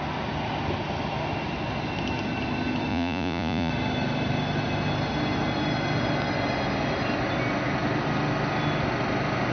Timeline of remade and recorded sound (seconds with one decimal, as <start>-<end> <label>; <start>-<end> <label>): 0.0-2.9 recorded; 2.9-3.7 remade; 3.7-9.5 recorded